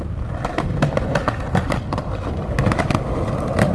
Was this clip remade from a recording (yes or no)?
yes